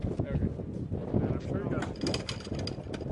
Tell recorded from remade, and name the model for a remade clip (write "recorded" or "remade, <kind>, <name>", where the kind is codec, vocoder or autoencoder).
recorded